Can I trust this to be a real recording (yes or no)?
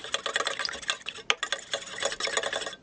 yes